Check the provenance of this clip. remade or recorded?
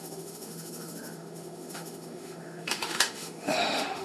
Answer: remade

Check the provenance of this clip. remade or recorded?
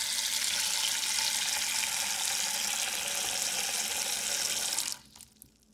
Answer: recorded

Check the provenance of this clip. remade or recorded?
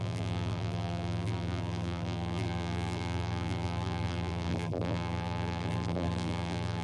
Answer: remade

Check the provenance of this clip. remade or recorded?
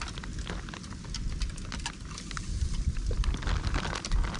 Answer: recorded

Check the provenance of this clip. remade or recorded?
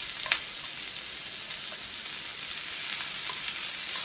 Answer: recorded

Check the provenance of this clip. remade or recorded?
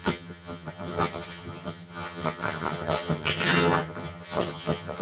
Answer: remade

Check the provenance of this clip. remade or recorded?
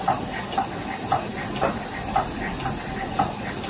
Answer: recorded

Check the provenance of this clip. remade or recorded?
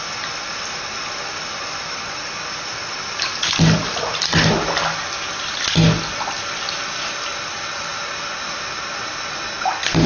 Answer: recorded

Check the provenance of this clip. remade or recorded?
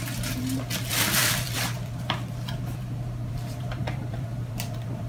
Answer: remade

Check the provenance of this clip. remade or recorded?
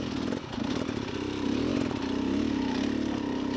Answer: recorded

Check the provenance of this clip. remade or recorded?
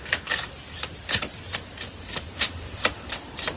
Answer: recorded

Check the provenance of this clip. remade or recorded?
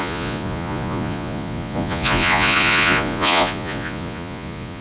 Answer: remade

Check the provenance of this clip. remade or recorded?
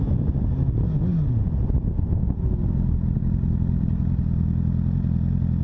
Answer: recorded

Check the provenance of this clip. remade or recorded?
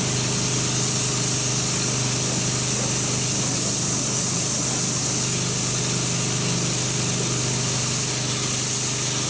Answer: recorded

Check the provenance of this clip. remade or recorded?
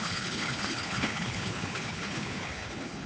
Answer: remade